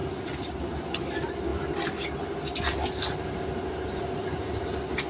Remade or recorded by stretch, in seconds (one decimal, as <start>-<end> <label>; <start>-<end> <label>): 0.0-5.1 recorded